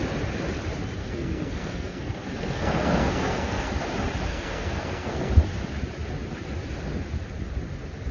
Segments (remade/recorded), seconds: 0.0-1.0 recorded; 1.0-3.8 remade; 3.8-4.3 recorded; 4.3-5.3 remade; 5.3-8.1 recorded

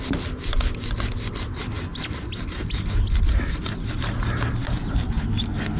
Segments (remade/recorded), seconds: 0.0-5.8 recorded

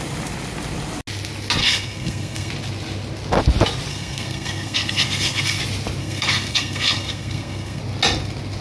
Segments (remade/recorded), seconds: 0.0-1.6 recorded; 1.6-2.5 remade; 2.5-3.9 recorded; 3.9-5.6 remade; 5.6-6.0 recorded; 6.0-7.8 remade; 7.8-8.6 recorded

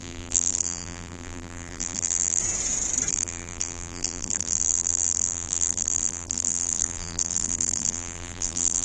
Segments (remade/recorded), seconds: 0.0-2.4 remade; 2.4-3.1 recorded; 3.1-8.8 remade

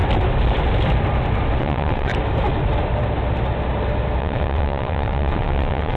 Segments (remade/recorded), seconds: 0.0-1.6 recorded; 1.6-2.1 remade; 2.1-4.2 recorded; 4.2-6.0 remade

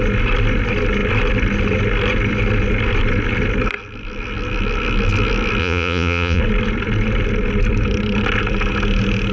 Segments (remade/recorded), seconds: 0.0-5.6 recorded; 5.6-6.4 remade; 6.4-9.3 recorded

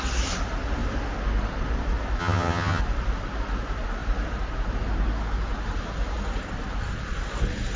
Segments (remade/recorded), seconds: 0.0-2.2 recorded; 2.2-2.8 remade; 2.8-7.8 recorded

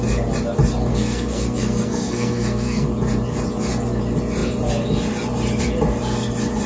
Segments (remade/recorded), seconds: 0.0-0.9 recorded; 0.9-2.9 remade; 2.9-6.7 recorded